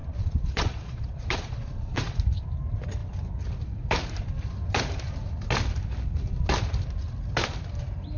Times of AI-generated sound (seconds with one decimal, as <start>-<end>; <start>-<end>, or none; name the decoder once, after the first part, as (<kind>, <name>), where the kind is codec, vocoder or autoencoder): 0.0-2.2 (vocoder, Vocos)